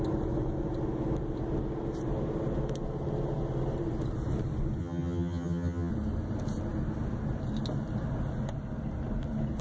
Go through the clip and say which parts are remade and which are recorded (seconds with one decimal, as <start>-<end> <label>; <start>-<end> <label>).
0.0-4.8 recorded; 4.8-5.9 remade; 5.9-9.6 recorded